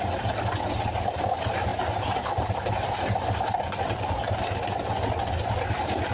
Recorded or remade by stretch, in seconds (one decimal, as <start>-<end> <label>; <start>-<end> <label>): 0.0-1.7 recorded; 1.7-4.7 remade; 4.7-6.1 recorded